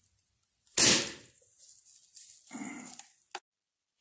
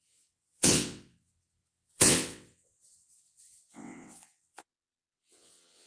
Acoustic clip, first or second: first